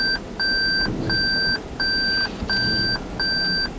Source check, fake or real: real